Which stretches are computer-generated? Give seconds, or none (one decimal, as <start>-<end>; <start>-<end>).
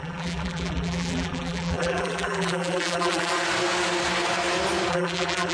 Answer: 0.0-3.3; 4.9-5.5